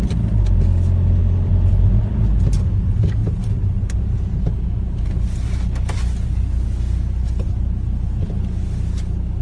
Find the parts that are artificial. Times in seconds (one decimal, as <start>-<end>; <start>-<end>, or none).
3.2-4.3